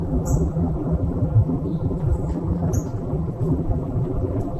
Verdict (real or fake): fake